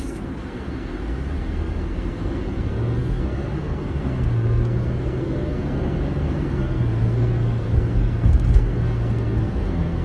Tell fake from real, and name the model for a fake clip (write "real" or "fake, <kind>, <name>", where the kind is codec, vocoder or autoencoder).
fake, codec, SNAC